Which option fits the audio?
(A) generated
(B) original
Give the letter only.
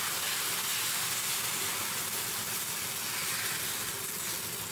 B